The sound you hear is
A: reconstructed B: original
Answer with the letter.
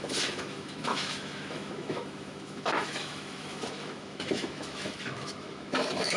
A